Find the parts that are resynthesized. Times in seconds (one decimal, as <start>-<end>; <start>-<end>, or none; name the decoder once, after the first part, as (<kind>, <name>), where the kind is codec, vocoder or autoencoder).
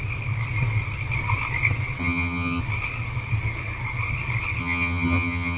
2.0-2.6 (vocoder, HiFi-GAN); 4.6-5.6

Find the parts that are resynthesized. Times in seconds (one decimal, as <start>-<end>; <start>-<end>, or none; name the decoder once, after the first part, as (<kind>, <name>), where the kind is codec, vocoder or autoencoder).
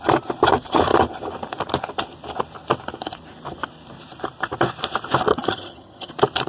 5.3-6.1 (vocoder, HiFi-GAN)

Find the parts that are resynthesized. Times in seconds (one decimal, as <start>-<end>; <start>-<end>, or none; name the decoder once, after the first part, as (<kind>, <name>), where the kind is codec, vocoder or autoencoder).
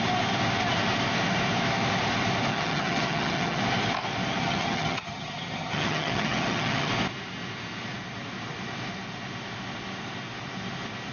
2.5-3.6 (vocoder, HiFi-GAN); 4.4-6.9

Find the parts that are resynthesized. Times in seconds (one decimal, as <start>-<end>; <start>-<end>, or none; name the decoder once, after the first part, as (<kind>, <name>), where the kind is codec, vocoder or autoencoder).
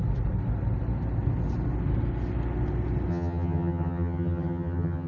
3.1-5.1 (vocoder, HiFi-GAN)